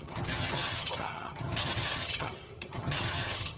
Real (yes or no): no